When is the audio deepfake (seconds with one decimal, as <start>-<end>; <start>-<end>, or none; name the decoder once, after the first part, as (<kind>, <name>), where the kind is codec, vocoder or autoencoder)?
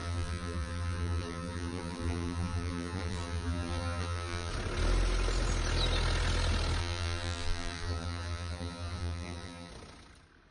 0.0-4.5 (vocoder, BigVGAN v2); 6.8-9.7